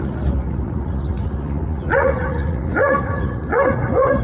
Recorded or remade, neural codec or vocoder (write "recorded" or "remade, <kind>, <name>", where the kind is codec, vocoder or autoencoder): remade, vocoder, Vocos